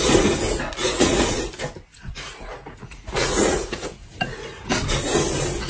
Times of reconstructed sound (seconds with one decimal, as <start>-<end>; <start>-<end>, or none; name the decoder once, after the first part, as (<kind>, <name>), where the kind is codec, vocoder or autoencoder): 0.8-1.5 (vocoder, Vocos); 1.9-4.7